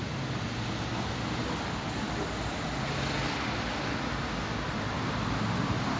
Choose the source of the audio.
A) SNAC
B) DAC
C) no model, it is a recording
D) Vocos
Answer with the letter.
C